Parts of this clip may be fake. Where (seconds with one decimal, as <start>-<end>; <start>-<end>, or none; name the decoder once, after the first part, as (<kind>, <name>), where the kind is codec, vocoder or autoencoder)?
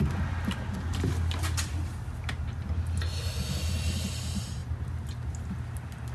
none